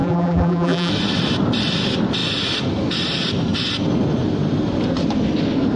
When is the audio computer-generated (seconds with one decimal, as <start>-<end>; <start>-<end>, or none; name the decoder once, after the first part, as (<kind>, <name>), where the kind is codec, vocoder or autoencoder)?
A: 0.0-0.9 (vocoder, BigVGAN v2)